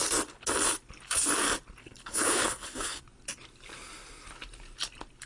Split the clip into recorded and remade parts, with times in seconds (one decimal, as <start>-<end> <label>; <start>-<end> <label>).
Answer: 0.0-1.8 recorded; 1.8-3.0 remade; 3.0-5.3 recorded